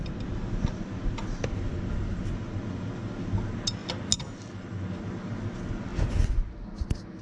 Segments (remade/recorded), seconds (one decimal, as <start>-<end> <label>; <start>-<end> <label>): 0.0-7.2 recorded